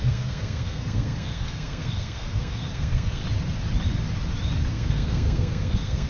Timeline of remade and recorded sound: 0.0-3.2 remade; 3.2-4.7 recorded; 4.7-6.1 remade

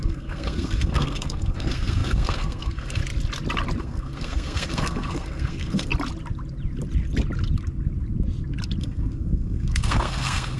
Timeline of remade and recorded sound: 0.0-3.0 remade; 3.0-3.8 recorded; 3.8-5.9 remade; 5.9-8.8 recorded; 8.8-10.6 remade

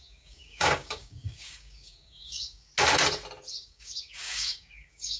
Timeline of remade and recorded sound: 0.0-2.7 remade; 2.7-3.5 recorded; 3.5-5.2 remade

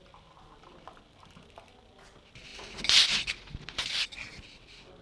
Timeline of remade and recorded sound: 0.0-5.0 recorded

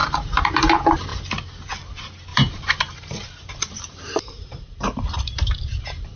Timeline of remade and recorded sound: 0.0-0.7 remade; 0.7-2.3 recorded; 2.3-6.2 remade